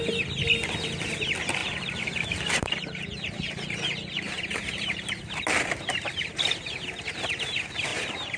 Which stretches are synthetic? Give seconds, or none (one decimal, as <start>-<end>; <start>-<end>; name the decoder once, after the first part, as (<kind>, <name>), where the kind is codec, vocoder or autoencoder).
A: 1.6-5.3 (vocoder, BigVGAN v2); 7.9-8.4